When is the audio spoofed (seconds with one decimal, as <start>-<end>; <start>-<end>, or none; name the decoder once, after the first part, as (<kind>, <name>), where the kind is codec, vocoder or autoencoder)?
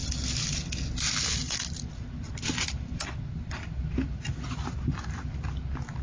none